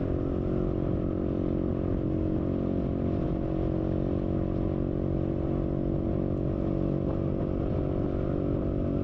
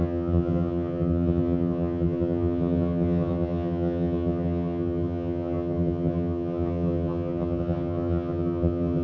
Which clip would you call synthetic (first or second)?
second